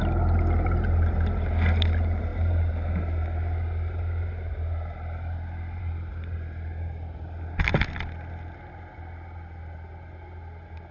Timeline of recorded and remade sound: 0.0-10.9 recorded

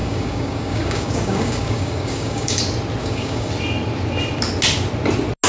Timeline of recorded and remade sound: 0.0-2.6 remade; 2.6-3.0 recorded; 3.0-3.5 remade; 3.5-5.5 recorded

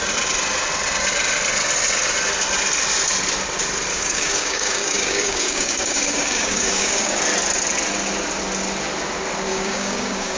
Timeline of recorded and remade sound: 0.0-3.9 recorded; 3.9-7.2 remade; 7.2-9.5 recorded; 9.5-10.4 remade

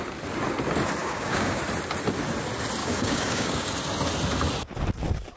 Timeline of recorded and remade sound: 0.0-1.0 recorded; 1.0-1.6 remade; 1.6-2.8 recorded; 2.8-3.7 remade; 3.7-5.4 recorded

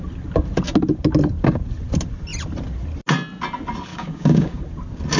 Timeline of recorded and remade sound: 0.0-3.9 recorded; 3.9-4.6 remade; 4.6-5.2 recorded

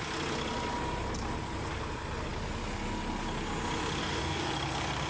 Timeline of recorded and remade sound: 0.0-4.0 recorded; 4.0-4.5 remade; 4.5-5.1 recorded

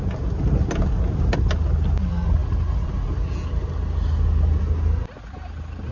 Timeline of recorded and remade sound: 0.0-5.9 recorded